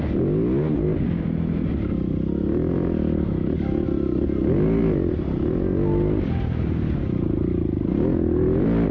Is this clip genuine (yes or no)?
yes